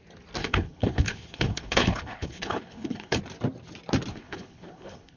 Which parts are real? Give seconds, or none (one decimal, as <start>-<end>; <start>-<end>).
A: 0.0-0.4; 3.2-4.1